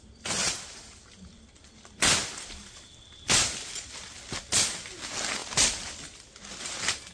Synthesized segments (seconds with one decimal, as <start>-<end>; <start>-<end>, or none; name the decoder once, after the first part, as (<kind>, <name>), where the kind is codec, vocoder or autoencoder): 0.4-4.1 (vocoder, BigVGAN v2); 5.4-6.2